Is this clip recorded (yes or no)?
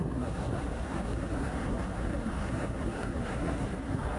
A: no